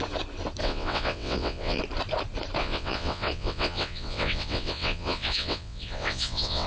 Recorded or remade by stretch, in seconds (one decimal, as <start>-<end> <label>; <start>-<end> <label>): 0.0-0.6 recorded; 0.6-1.8 remade; 1.8-2.6 recorded; 2.6-6.7 remade